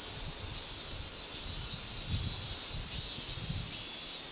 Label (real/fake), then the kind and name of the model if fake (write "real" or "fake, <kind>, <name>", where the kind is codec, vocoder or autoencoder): real